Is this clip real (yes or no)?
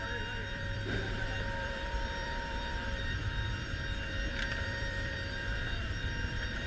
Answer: no